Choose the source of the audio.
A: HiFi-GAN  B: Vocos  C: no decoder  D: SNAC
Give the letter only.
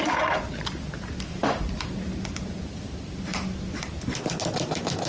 C